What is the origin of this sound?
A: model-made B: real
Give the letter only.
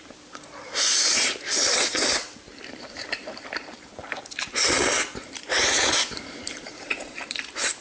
A